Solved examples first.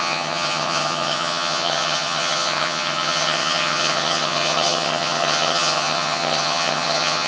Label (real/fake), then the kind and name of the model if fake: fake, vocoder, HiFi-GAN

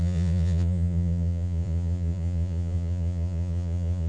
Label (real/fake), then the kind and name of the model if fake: fake, vocoder, Vocos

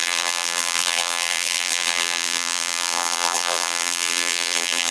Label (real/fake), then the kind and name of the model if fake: fake, vocoder, BigVGAN v2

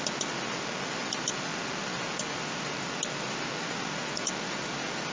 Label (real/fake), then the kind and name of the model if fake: real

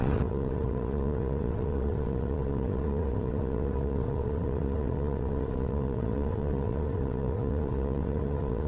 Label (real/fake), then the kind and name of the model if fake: fake, vocoder, WaveNeXt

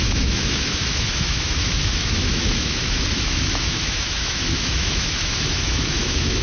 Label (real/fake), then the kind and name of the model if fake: fake, autoencoder, DAC-VAE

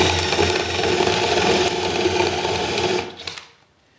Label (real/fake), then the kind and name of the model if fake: real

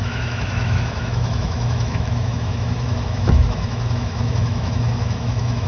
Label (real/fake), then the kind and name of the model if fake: fake, autoencoder, DAC-VAE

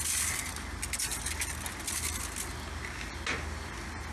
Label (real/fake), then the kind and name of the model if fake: real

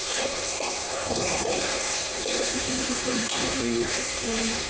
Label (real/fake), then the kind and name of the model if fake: fake, codec, SNAC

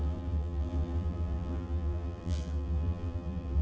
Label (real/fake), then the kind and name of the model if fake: fake, vocoder, BigVGAN v2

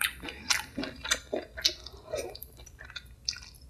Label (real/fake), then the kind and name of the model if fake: real